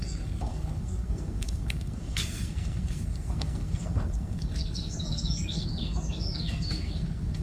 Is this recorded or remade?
remade